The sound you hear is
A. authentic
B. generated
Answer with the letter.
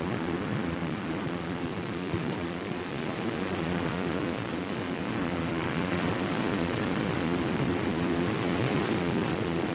B